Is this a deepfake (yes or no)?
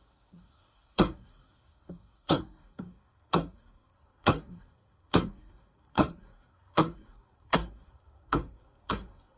yes